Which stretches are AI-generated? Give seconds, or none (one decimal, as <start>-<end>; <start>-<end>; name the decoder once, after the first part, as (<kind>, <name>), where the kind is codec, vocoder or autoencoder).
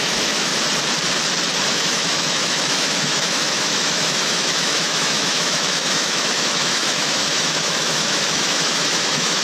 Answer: 0.0-0.5 (autoencoder, DAC-VAE); 1.7-9.4